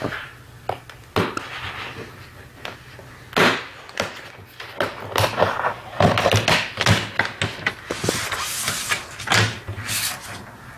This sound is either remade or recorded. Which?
recorded